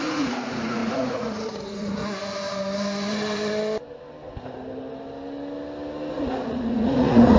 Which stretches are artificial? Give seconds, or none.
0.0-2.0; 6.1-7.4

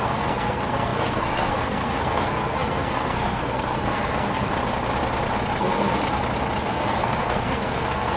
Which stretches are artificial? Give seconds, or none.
0.0-4.5; 5.6-6.0; 6.7-8.2

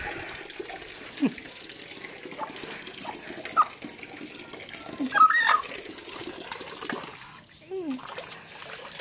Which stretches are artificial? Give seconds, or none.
none